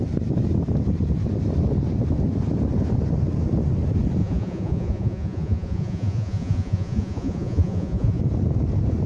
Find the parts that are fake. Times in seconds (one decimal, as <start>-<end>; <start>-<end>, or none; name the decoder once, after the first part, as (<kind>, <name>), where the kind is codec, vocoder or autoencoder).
4.2-8.2 (vocoder, Vocos)